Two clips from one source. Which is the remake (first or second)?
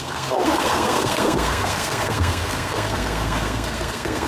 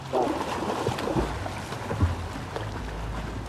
first